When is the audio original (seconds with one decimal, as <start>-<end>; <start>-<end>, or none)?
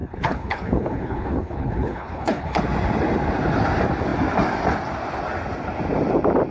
2.6-6.5